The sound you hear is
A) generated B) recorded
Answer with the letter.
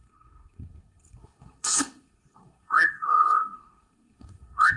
A